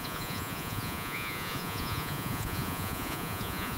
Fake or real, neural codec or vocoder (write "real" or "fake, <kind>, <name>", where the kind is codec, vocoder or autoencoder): fake, vocoder, Vocos